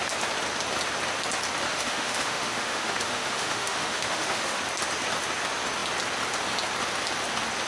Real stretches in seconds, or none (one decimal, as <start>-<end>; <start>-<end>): 0.0-1.7; 4.6-7.7